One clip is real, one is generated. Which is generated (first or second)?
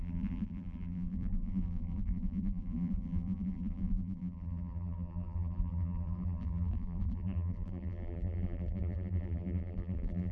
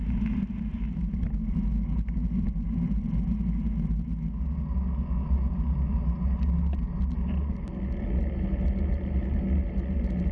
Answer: first